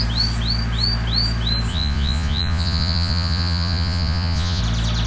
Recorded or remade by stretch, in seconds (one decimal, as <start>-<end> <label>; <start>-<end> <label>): 0.0-1.7 recorded; 1.7-4.6 remade; 4.6-5.1 recorded